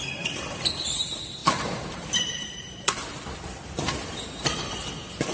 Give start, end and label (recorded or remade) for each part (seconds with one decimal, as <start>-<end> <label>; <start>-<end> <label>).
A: 0.0-1.4 recorded; 1.4-2.8 remade; 2.8-5.3 recorded